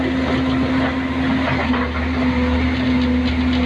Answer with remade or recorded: recorded